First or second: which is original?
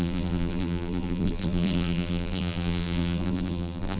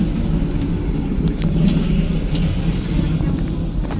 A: second